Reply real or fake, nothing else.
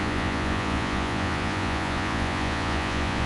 fake